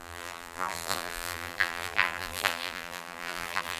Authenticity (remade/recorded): remade